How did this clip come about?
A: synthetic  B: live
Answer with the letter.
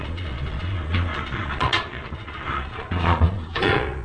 A